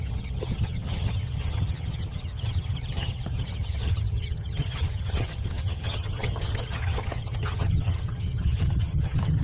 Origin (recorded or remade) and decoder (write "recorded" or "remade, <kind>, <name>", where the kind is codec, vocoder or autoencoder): remade, vocoder, HiFi-GAN